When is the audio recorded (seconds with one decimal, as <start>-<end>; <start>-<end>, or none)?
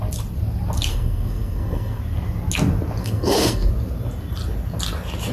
0.0-0.9; 2.0-3.0; 3.7-5.3